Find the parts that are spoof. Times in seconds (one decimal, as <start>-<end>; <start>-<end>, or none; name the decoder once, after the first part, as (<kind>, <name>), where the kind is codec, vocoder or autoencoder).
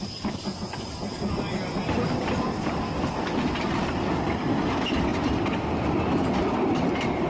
none